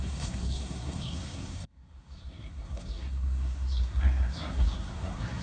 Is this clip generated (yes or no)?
yes